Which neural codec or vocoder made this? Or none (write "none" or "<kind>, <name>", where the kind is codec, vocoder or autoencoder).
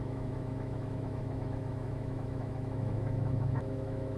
autoencoder, DAC-VAE